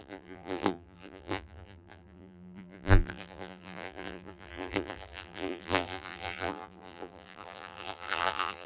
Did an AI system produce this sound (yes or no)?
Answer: yes